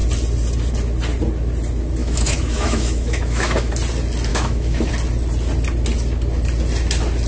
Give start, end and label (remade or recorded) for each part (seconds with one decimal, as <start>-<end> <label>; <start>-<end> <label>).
0.0-2.0 recorded; 2.0-3.7 remade; 3.7-4.3 recorded; 4.3-4.9 remade; 4.9-7.3 recorded